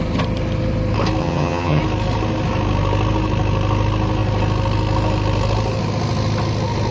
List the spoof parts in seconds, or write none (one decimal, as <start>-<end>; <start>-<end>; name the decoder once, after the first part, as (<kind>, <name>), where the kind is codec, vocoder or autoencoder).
1.2-1.8 (vocoder, HiFi-GAN)